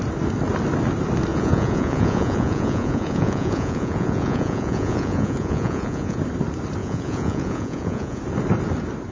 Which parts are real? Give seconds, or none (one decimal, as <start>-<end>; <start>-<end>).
0.0-1.3; 6.2-6.8; 8.2-9.1